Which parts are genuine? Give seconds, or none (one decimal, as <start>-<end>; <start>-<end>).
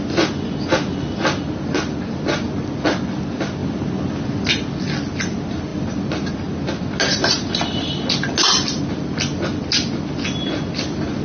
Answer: 0.0-11.2